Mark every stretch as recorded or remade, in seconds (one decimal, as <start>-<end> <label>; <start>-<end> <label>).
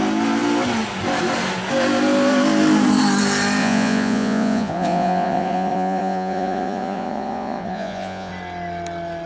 0.0-3.6 recorded; 3.6-8.3 remade; 8.3-9.3 recorded